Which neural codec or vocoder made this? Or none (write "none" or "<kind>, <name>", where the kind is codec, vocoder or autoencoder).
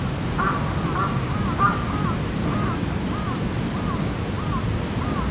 none